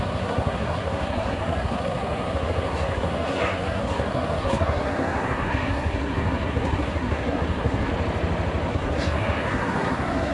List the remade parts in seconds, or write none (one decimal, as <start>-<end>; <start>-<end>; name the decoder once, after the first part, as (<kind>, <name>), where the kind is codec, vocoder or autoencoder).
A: 0.0-7.9 (codec, SNAC); 8.7-10.3

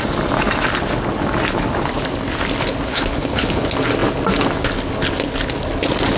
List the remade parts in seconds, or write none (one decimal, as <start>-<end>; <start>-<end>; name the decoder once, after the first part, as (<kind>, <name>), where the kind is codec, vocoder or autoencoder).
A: 2.9-3.6 (codec, HILCodec)

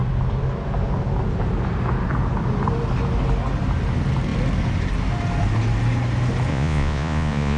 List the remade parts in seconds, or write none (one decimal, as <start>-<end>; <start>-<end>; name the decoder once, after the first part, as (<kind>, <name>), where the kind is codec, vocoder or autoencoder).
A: 6.5-7.6 (vocoder, Vocos)

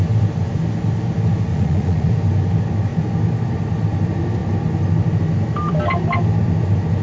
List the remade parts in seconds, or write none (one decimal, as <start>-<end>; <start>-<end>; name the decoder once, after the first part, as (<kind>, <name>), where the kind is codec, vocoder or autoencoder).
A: 1.5-2.1 (vocoder, Vocos)

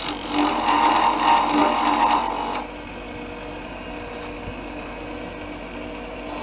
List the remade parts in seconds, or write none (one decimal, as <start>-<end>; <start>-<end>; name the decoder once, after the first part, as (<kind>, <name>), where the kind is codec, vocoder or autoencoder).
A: none

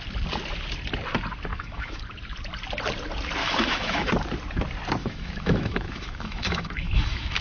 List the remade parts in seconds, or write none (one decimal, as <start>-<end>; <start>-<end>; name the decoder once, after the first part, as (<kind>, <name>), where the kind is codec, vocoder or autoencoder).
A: 1.5-2.0 (autoencoder, DAC-VAE); 3.4-4.1; 5.0-7.4

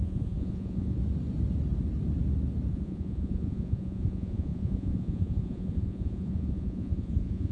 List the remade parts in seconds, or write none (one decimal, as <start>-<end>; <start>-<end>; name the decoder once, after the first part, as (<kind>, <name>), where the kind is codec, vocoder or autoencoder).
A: 0.0-1.0 (vocoder, Vocos); 2.7-7.5

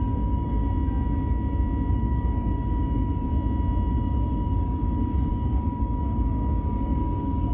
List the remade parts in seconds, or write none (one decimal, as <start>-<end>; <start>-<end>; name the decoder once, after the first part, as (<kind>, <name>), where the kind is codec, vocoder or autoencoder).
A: 0.0-0.7 (codec, DAC); 1.9-3.3; 3.9-7.5